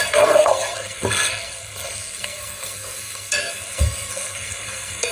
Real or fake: fake